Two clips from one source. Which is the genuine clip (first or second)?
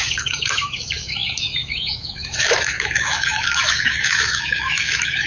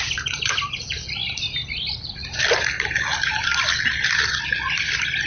second